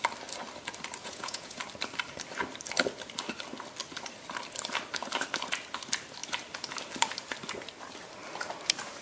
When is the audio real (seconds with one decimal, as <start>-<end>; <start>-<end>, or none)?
0.0-1.0; 1.6-9.0